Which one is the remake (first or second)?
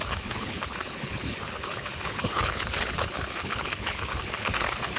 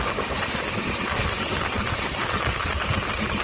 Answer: first